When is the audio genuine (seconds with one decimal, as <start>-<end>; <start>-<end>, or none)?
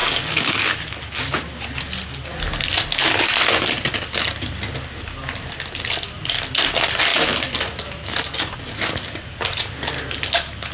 0.7-10.7